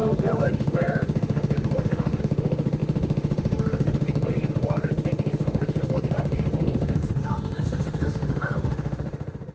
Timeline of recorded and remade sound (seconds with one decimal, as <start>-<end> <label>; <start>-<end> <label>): 0.0-9.5 remade